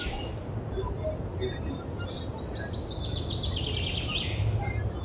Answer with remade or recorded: recorded